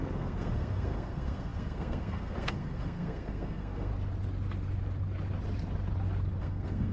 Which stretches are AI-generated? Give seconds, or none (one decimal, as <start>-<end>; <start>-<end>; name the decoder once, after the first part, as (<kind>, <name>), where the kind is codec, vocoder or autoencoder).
0.0-3.9 (codec, SNAC); 6.4-6.9